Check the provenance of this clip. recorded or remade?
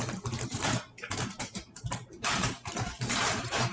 remade